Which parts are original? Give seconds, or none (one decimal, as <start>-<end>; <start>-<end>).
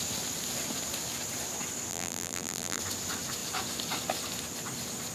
0.0-1.9; 2.8-5.1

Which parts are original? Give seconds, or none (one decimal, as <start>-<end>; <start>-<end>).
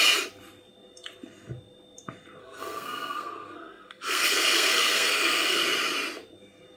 0.0-2.4; 5.6-6.8